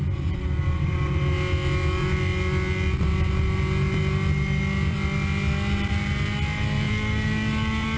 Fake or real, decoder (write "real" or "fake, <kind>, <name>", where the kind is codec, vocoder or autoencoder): real